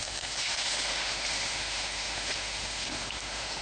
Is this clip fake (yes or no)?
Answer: yes